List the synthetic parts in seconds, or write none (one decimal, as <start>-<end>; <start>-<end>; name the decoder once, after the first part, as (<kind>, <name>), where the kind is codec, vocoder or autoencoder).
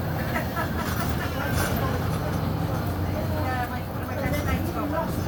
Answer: 0.5-1.4 (vocoder, BigVGAN v2)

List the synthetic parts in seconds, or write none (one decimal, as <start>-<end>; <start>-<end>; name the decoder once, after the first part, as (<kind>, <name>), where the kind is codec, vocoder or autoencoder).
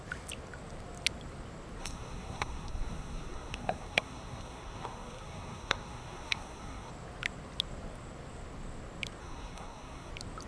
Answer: 1.8-6.9 (codec, SNAC); 9.2-10.1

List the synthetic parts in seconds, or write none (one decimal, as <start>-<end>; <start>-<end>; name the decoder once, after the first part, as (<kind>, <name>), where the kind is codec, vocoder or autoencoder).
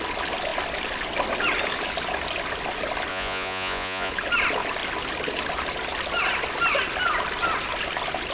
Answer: 3.1-4.1 (vocoder, Vocos)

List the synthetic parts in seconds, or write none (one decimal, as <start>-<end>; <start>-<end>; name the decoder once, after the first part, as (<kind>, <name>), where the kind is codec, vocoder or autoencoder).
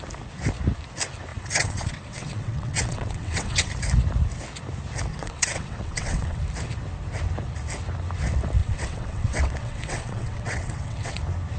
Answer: 1.3-3.7 (vocoder, WaveNeXt); 5.1-6.4; 8.6-11.2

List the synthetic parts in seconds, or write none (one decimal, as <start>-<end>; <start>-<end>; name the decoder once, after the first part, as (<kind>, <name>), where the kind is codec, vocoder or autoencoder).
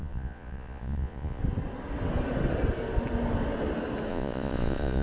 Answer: 0.0-1.4 (vocoder, Vocos); 4.1-5.0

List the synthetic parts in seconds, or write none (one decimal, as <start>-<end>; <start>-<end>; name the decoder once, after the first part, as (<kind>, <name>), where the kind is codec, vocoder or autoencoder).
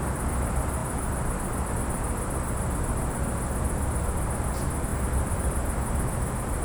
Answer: 4.9-5.5 (vocoder, BigVGAN v2)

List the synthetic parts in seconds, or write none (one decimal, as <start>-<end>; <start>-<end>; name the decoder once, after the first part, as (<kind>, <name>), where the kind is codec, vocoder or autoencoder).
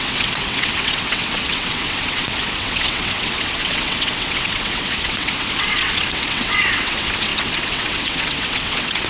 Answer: 0.0-9.1 (vocoder, WaveNeXt)